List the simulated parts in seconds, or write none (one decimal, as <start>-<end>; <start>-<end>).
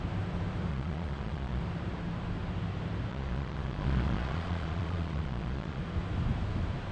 0.7-1.6; 3.1-5.8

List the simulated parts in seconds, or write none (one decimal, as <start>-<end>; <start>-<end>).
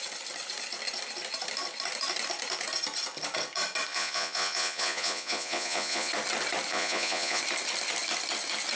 3.9-6.1; 6.7-7.4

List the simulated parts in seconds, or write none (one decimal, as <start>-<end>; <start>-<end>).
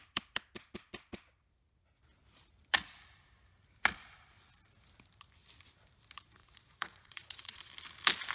6.4-7.7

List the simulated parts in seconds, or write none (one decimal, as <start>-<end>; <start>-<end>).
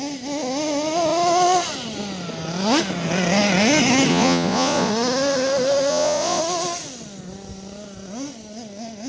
4.1-4.9; 5.9-6.4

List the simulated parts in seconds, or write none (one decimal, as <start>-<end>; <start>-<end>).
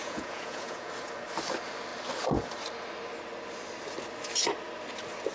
0.0-0.9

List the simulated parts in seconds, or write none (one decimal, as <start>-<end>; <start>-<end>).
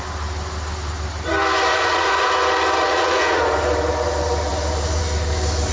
1.7-2.3; 2.8-3.4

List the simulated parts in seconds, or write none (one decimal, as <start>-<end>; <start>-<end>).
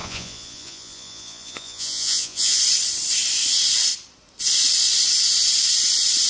0.0-2.6